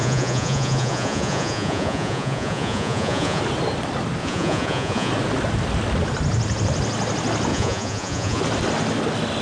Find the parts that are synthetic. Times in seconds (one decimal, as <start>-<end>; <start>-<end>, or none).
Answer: 0.0-3.4; 4.2-5.1; 7.5-8.4